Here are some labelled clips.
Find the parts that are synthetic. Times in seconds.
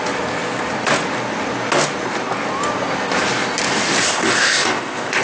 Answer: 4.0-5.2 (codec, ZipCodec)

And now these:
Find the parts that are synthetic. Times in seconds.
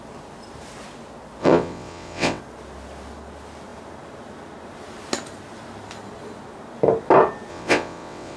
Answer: 1.4-2.4 (vocoder, WaveNeXt); 7.5-8.4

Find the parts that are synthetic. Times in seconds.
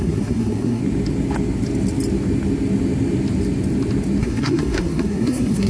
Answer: 0.0-0.8 (codec, SNAC); 4.2-5.7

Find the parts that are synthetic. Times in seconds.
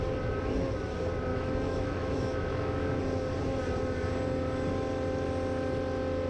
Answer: 1.3-3.0 (autoencoder, DAC-VAE)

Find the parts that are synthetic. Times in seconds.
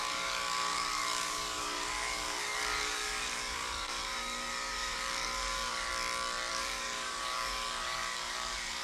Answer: 0.0-5.9 (codec, DAC); 6.5-8.8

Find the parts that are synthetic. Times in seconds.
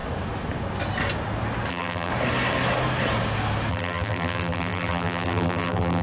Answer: 1.7-2.1 (vocoder, BigVGAN v2); 3.7-6.0